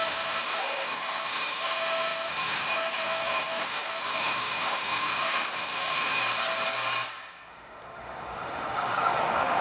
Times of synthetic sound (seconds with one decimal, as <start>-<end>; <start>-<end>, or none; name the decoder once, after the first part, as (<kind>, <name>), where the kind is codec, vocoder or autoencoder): 0.0-6.2 (autoencoder, DAC-VAE); 7.5-9.6